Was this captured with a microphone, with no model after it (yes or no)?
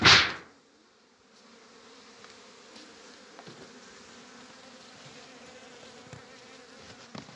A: yes